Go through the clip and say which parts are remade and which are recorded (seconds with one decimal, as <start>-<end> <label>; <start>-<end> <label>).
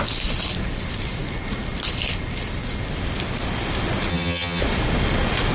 0.0-4.1 recorded; 4.1-4.6 remade; 4.6-5.5 recorded